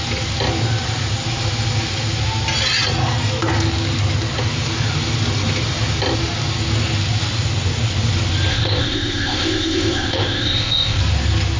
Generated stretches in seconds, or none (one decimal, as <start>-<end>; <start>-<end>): 8.5-11.0